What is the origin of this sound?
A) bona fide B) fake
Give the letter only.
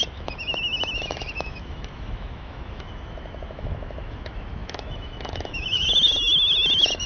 B